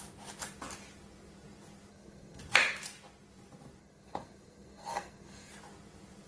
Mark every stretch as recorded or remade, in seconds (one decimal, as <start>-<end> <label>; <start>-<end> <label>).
0.0-1.9 recorded; 1.9-2.4 remade; 2.4-3.8 recorded; 3.8-5.5 remade; 5.5-6.3 recorded